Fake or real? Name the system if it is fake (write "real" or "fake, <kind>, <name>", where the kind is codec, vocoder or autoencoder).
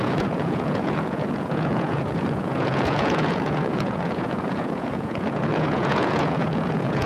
fake, vocoder, Vocos